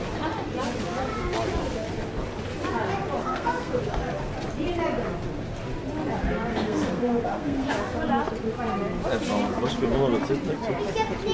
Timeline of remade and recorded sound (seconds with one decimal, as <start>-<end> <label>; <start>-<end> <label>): 0.0-3.2 recorded; 3.2-3.8 remade; 3.8-6.5 recorded; 6.5-7.7 remade; 7.7-11.3 recorded